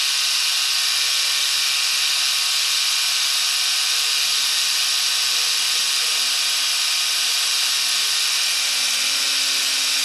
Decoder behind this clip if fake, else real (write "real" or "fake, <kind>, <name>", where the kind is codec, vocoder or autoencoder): real